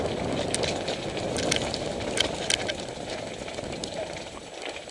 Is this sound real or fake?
real